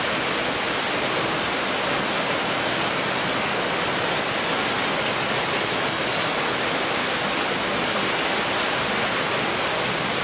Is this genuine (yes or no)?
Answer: yes